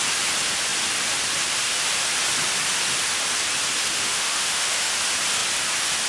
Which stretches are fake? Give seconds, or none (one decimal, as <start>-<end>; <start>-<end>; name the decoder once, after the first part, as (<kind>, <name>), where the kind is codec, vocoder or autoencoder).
3.9-4.9 (autoencoder, DAC-VAE)